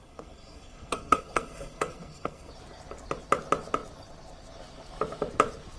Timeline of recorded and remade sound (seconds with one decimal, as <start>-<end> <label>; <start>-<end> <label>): 0.0-2.5 remade; 2.5-5.8 recorded